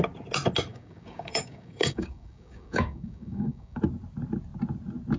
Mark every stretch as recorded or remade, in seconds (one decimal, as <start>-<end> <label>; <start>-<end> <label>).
0.0-0.7 recorded; 0.7-3.8 remade; 3.8-5.2 recorded